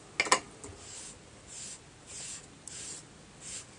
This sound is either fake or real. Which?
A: real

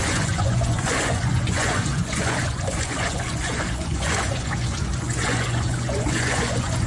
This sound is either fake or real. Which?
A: fake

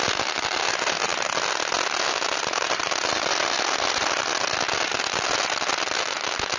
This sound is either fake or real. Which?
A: real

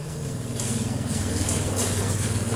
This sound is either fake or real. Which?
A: fake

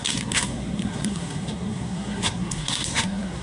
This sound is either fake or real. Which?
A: fake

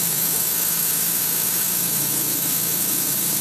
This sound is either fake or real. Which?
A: fake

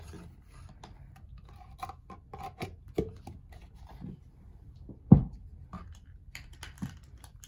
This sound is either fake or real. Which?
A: fake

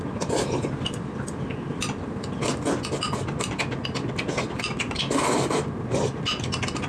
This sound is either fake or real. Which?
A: real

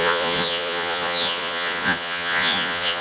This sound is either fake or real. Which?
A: fake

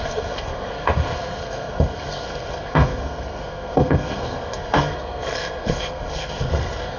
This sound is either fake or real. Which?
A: fake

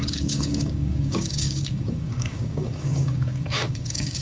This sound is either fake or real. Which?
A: fake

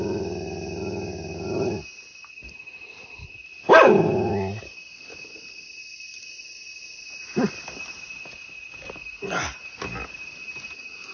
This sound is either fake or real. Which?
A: real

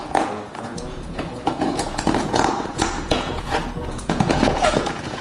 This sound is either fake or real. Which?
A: fake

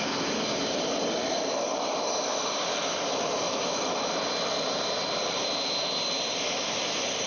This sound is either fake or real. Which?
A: real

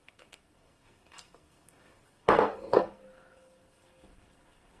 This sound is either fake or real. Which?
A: fake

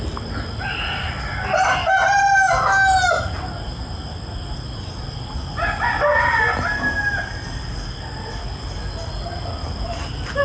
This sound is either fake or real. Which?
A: real